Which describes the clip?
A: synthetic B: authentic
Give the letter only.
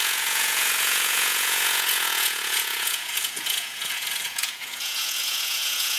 A